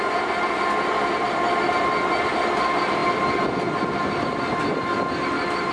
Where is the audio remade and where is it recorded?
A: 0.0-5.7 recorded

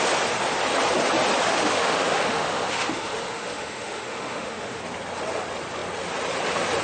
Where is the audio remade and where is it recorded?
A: 0.0-1.5 recorded; 1.5-4.8 remade; 4.8-6.8 recorded